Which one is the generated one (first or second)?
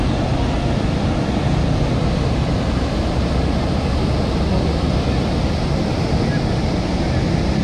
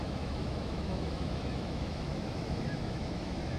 second